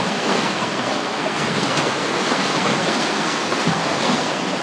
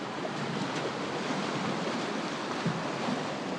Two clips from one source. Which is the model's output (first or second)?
first